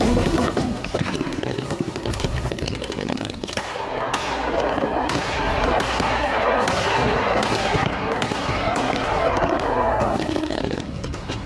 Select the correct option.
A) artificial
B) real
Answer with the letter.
A